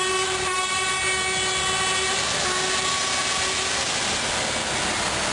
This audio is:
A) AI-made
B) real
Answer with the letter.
B